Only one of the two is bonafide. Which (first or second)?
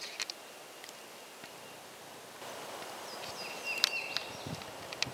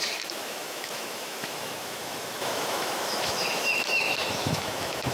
first